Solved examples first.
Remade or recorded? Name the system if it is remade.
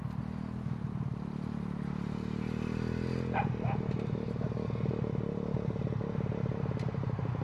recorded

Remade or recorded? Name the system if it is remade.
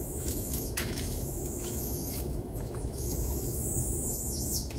remade, autoencoder, DAC-VAE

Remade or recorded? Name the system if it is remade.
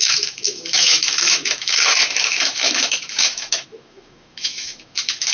remade, autoencoder, DAC-VAE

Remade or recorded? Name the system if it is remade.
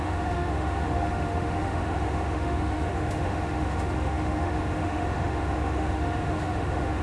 remade, autoencoder, DAC-VAE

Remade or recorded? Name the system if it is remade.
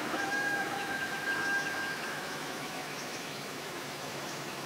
remade, autoencoder, DAC-VAE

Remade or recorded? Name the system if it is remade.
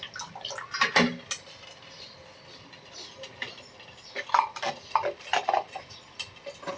recorded